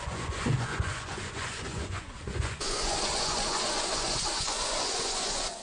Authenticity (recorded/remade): remade